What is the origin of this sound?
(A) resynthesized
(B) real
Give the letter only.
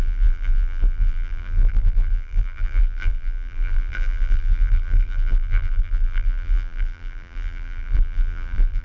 A